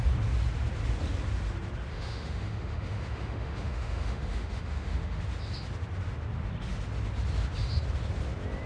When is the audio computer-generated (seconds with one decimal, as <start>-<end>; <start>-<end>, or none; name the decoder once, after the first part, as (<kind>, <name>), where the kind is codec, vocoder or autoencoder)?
1.9-5.2 (autoencoder, DAC-VAE)